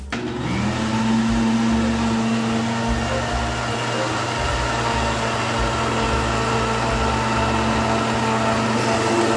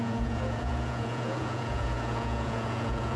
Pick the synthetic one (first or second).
second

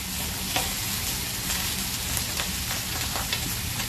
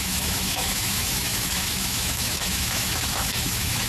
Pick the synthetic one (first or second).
second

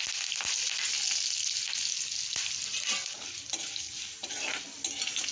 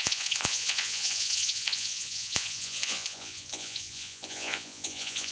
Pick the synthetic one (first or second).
second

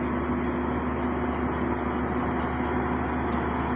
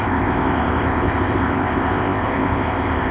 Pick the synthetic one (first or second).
second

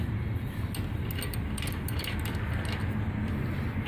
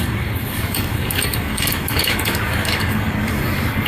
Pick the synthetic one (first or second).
second